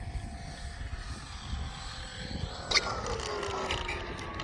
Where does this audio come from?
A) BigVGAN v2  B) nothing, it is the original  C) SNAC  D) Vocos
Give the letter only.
B